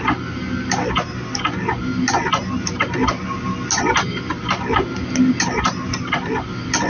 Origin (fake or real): real